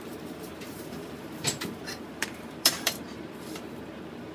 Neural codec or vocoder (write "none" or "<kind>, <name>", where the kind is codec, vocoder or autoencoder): vocoder, BigVGAN v2